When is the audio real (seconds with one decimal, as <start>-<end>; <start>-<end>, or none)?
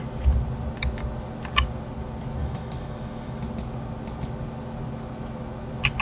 0.0-2.4; 3.4-6.0